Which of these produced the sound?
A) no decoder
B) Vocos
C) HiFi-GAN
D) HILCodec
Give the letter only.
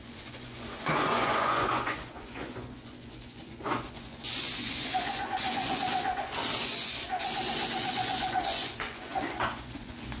B